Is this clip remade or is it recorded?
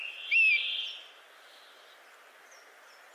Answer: recorded